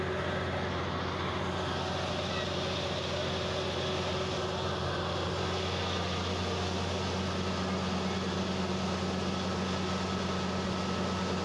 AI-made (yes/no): no